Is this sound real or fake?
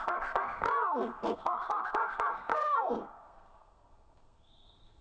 fake